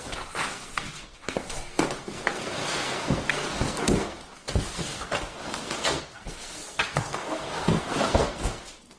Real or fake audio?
fake